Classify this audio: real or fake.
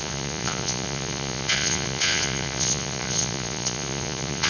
fake